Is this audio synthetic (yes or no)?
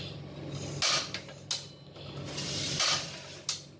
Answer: no